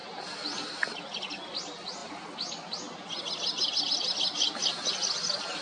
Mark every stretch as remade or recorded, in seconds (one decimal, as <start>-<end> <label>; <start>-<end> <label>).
0.0-5.6 recorded